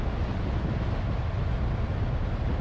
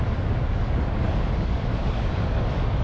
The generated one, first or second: second